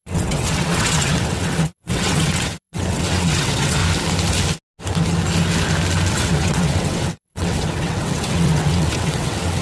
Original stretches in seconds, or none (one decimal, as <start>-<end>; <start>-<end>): 3.8-6.1